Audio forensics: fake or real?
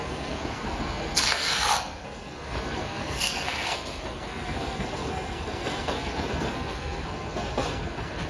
fake